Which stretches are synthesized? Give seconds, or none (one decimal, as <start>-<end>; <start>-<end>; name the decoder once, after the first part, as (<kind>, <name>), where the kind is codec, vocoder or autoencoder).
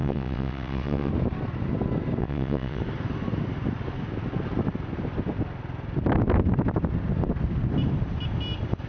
0.0-1.1 (vocoder, WaveNeXt); 2.2-2.8